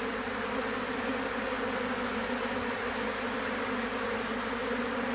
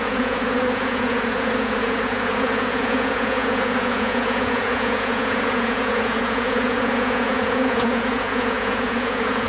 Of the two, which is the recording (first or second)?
first